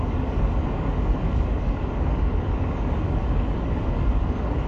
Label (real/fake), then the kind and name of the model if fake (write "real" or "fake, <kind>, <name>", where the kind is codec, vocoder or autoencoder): fake, codec, DAC